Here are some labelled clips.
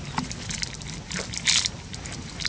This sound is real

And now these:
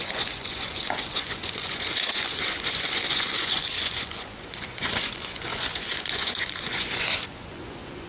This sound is fake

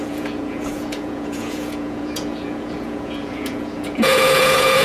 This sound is fake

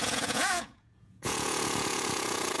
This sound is fake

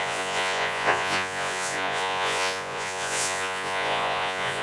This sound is fake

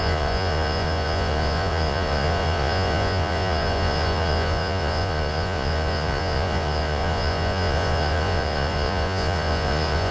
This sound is fake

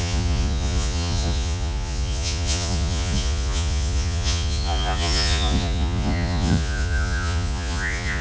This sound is fake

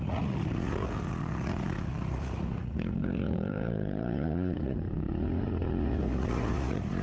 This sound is fake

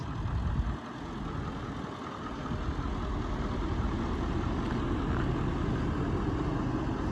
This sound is real